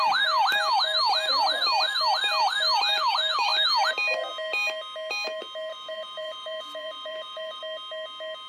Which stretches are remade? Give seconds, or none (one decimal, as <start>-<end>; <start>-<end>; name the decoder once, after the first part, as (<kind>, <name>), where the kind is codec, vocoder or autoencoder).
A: 5.7-7.6 (vocoder, Vocos)